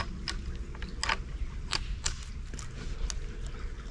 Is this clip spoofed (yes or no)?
no